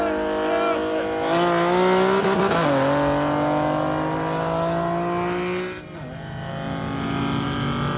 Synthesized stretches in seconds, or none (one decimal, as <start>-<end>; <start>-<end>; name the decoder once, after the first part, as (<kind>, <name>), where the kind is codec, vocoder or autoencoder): none